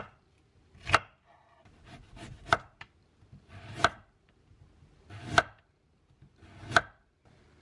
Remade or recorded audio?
recorded